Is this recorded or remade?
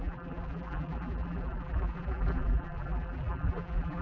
remade